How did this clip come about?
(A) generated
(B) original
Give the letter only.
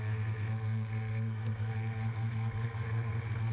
A